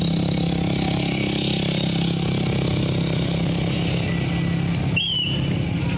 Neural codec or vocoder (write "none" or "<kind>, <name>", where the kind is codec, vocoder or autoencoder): none